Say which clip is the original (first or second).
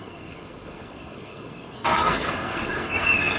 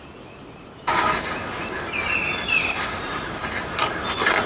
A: second